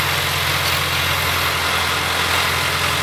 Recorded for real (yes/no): yes